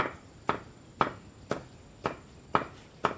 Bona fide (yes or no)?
yes